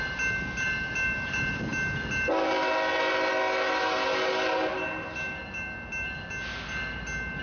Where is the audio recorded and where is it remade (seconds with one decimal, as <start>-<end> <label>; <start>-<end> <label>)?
0.0-7.4 recorded

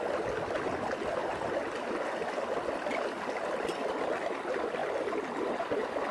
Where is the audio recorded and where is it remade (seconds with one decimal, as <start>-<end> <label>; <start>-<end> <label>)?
0.0-6.1 recorded

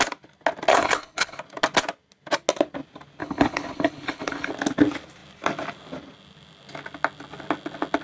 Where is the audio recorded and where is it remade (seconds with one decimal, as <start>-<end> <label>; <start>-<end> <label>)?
0.0-0.7 recorded; 0.7-1.4 remade; 1.4-3.2 recorded; 3.2-4.5 remade; 4.5-8.0 recorded

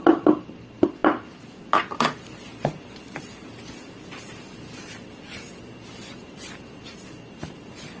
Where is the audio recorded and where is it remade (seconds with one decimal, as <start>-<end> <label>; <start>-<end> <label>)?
0.0-8.0 recorded